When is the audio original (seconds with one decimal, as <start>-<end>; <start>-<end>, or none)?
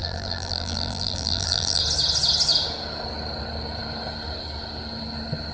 1.8-5.5